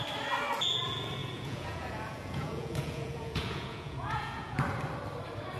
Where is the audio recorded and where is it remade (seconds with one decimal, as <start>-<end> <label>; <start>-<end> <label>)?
0.0-1.2 recorded; 1.2-4.6 remade; 4.6-5.6 recorded